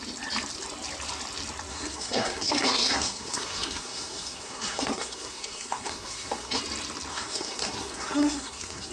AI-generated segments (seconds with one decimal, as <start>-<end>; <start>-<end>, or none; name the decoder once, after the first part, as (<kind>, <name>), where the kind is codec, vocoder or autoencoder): 1.7-6.6 (codec, SNAC); 7.1-8.9